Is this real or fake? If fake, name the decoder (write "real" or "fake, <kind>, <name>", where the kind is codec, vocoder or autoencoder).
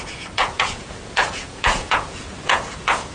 fake, vocoder, Vocos